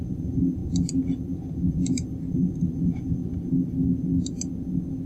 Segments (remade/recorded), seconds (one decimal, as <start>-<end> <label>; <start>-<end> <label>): 0.0-0.6 remade; 0.6-1.7 recorded; 1.7-3.2 remade; 3.2-5.1 recorded